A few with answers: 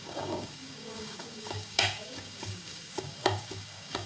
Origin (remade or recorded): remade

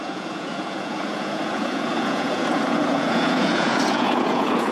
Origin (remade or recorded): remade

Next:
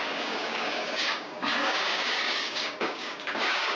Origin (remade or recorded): remade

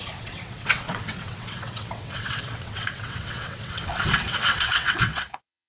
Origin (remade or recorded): remade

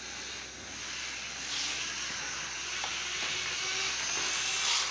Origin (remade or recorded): recorded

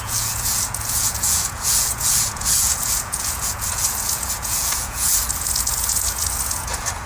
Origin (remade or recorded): remade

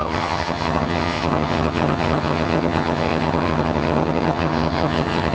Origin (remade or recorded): remade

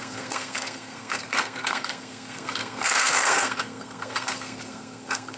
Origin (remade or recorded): remade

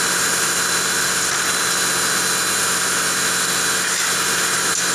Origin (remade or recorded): recorded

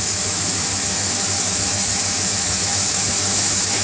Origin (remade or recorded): remade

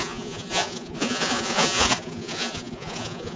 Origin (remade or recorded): remade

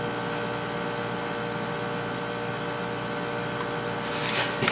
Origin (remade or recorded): recorded